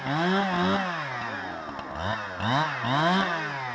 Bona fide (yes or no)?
yes